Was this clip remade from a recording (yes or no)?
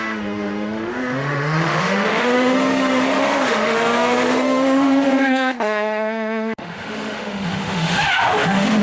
yes